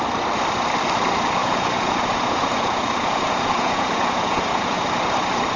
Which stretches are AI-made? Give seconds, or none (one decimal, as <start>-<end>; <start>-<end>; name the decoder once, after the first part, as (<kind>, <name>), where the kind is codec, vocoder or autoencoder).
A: 1.4-4.8 (vocoder, Vocos)